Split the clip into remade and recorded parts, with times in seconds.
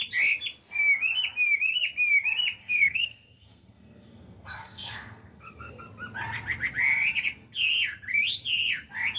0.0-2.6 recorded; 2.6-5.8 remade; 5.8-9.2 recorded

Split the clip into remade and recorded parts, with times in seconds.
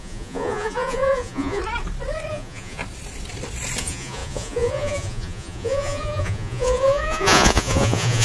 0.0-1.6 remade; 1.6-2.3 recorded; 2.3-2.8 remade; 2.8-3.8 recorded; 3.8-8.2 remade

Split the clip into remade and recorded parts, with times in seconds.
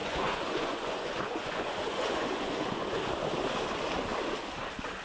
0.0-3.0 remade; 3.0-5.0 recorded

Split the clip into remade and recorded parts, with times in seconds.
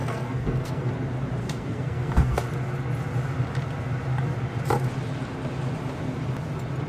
0.0-0.9 remade; 0.9-1.4 recorded; 1.4-2.4 remade; 2.4-6.9 recorded